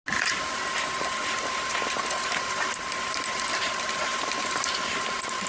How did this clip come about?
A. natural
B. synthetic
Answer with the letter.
A